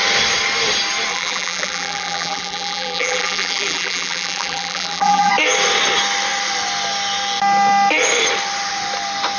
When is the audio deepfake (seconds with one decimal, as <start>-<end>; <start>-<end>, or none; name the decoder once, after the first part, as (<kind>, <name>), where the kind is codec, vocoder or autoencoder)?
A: 1.1-5.3 (vocoder, BigVGAN v2)